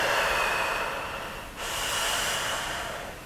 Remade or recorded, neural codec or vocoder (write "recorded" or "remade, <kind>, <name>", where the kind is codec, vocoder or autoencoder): recorded